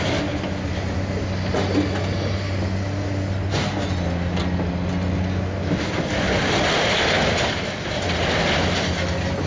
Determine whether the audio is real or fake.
real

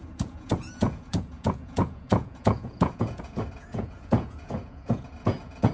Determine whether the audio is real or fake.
fake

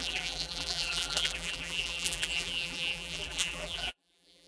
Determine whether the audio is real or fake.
fake